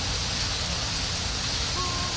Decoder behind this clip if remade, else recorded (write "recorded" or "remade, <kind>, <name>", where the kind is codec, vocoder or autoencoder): recorded